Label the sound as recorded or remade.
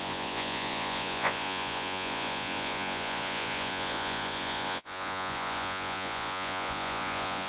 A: remade